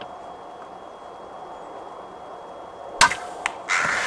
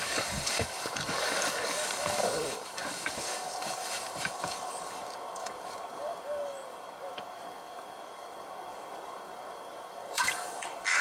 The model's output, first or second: second